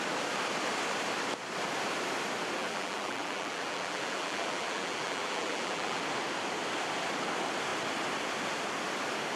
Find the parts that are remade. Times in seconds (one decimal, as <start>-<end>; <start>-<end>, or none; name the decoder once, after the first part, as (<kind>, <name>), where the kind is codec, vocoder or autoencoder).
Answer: 2.6-6.0 (vocoder, BigVGAN v2)